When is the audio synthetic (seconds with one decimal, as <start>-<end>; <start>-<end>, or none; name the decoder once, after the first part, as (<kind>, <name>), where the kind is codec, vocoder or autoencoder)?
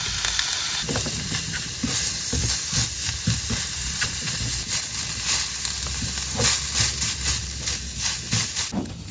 3.8-4.4 (vocoder, Vocos)